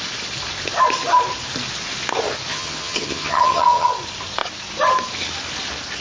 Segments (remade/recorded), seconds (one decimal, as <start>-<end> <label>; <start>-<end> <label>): 0.0-2.5 recorded; 2.5-3.9 remade; 3.9-6.0 recorded